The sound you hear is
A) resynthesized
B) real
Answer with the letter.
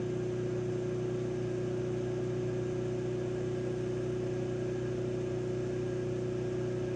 B